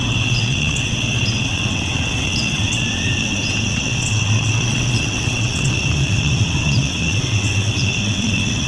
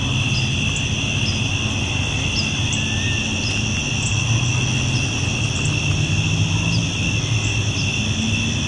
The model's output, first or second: first